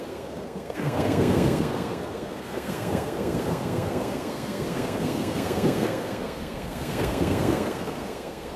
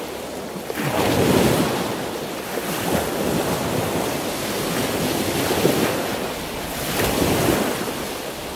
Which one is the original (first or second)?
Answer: second